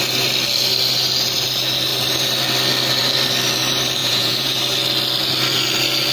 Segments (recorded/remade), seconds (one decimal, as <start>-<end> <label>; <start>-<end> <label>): 0.0-4.0 recorded; 4.0-4.6 remade; 4.6-6.1 recorded